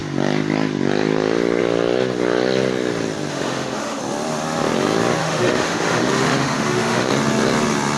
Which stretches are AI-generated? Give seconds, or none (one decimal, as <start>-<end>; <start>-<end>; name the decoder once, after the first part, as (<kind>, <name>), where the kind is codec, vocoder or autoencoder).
3.3-4.0 (autoencoder, DAC-VAE); 5.2-7.1